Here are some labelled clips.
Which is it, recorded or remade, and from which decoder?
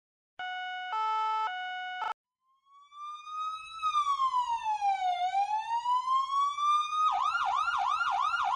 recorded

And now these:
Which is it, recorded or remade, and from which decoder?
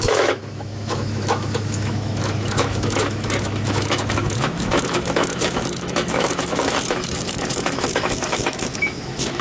remade, autoencoder, DAC-VAE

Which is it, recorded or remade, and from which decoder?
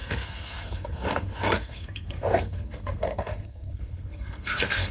remade, codec, SNAC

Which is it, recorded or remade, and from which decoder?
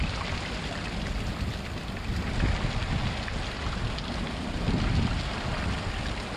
recorded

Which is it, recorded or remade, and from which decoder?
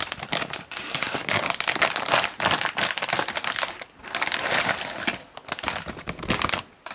recorded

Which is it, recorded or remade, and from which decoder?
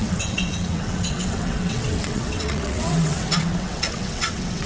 remade, vocoder, WaveNeXt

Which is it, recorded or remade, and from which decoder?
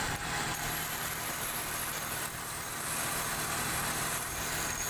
remade, vocoder, BigVGAN v2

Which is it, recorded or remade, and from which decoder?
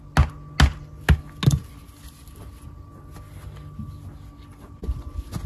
recorded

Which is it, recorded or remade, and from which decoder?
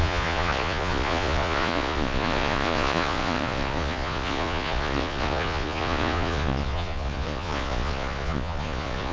remade, vocoder, Vocos